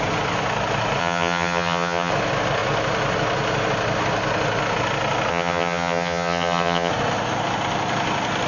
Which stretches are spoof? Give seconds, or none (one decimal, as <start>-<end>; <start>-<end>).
1.0-2.1; 5.3-6.9